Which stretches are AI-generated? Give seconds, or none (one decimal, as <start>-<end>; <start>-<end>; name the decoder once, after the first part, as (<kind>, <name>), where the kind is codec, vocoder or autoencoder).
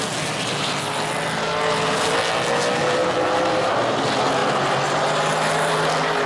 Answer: none